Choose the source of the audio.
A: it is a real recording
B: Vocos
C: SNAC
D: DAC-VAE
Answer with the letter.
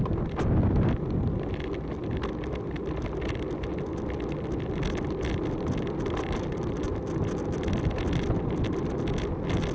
A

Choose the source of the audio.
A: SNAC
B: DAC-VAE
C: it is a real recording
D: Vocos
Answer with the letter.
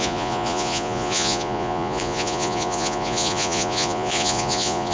D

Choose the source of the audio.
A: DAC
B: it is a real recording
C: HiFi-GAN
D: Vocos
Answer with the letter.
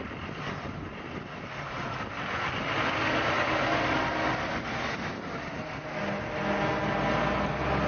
B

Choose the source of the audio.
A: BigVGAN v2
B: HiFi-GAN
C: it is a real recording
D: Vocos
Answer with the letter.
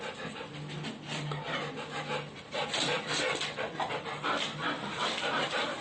C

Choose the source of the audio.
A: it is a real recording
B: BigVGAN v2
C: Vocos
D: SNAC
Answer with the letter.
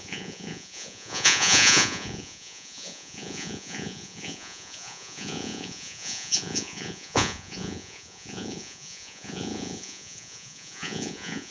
C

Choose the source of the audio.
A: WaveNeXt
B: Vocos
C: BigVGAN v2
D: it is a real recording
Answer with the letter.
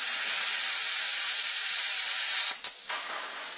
D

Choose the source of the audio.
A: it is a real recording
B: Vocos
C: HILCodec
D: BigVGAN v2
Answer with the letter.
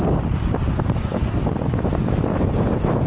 A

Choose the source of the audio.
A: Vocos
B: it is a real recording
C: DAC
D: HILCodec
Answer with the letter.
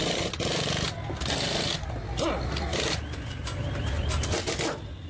B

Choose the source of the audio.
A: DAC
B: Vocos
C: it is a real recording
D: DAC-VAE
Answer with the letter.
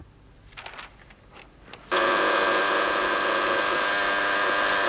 C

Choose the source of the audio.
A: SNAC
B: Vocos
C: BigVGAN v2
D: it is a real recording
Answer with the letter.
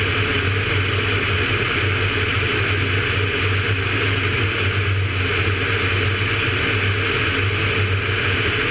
D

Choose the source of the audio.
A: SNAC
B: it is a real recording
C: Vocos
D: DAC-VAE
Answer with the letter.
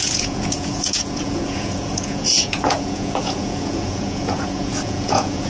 C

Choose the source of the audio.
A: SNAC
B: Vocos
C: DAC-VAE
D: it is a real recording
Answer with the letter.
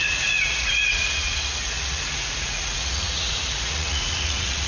B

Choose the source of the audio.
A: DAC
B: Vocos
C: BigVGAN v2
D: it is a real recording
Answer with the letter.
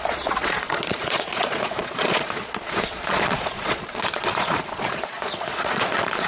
B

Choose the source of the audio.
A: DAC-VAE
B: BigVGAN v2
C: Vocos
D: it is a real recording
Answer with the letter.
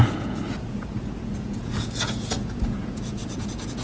C